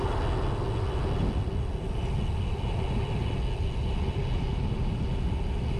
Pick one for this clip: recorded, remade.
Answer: recorded